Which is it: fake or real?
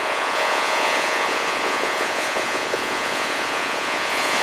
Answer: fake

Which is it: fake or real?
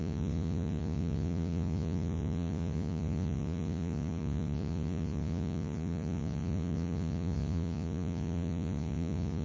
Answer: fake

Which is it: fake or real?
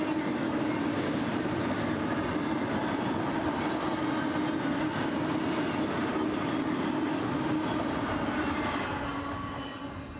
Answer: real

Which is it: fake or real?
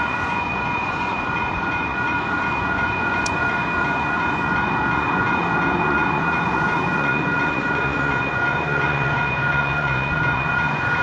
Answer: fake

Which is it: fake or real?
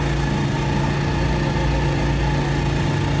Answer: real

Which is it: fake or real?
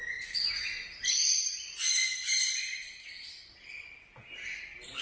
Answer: real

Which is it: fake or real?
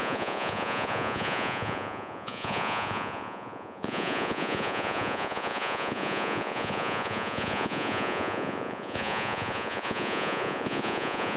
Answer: fake